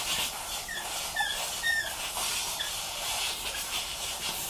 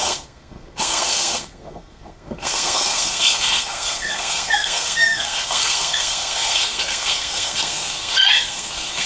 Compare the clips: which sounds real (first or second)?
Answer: first